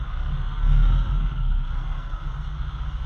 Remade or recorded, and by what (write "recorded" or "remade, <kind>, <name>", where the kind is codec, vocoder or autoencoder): remade, codec, SNAC